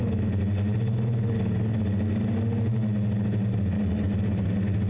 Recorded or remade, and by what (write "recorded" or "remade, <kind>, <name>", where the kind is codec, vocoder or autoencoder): recorded